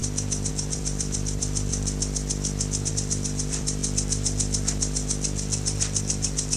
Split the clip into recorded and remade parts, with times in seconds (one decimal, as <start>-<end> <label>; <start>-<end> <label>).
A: 0.0-0.5 recorded; 0.5-1.7 remade; 1.7-2.9 recorded; 2.9-3.8 remade; 3.8-6.6 recorded